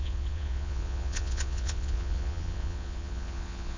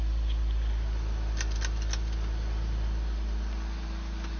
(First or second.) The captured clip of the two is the second